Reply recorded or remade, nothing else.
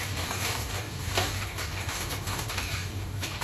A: remade